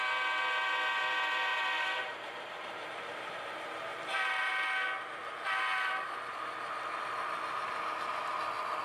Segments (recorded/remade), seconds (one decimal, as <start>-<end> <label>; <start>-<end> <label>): 0.0-1.5 recorded; 1.5-3.3 remade; 3.3-3.9 recorded; 3.9-4.5 remade; 4.5-5.2 recorded; 5.2-6.5 remade; 6.5-8.8 recorded